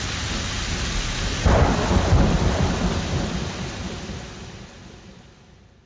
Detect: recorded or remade recorded